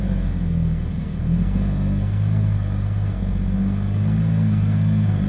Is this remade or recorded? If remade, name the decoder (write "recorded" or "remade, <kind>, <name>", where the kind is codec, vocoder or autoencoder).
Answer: remade, codec, SNAC